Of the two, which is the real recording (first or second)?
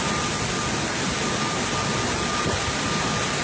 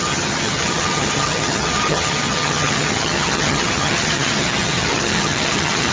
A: first